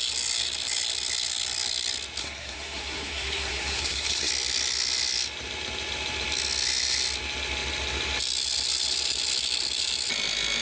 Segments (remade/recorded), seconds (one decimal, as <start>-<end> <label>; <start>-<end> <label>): 0.0-2.2 recorded; 2.2-4.3 remade; 4.3-10.6 recorded